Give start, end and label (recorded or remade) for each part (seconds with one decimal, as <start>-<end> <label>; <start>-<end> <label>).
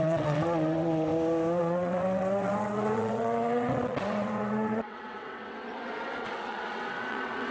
0.0-1.1 remade; 1.1-1.6 recorded; 1.6-7.5 remade